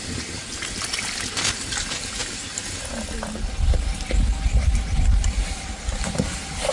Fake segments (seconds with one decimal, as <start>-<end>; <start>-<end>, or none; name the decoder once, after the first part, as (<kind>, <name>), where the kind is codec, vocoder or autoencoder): none